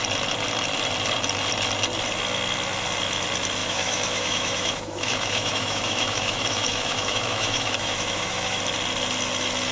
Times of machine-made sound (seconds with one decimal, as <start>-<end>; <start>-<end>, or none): 3.6-8.6